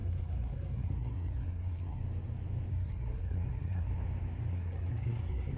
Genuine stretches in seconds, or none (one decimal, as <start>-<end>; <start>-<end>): 2.0-2.7; 3.9-4.5